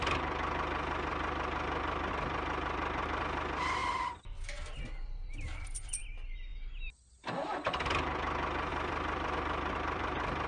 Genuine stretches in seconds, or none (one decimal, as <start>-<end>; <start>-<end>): 0.0-3.8; 6.0-8.7